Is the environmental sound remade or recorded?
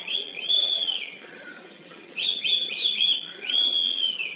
remade